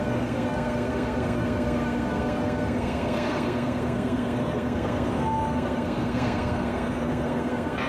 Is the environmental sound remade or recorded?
remade